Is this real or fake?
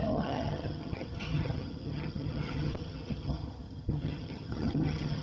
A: fake